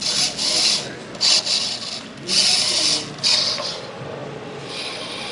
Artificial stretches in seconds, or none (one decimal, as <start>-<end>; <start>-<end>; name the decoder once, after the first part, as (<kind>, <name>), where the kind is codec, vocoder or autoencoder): none